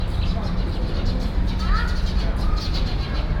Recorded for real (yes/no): yes